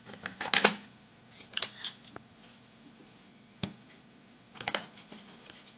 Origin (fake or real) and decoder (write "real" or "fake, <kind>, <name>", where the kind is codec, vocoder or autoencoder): real